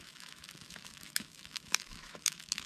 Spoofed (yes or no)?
yes